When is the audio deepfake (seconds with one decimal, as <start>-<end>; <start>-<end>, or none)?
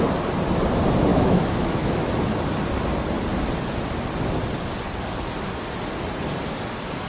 1.1-2.1